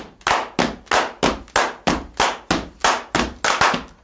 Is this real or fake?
real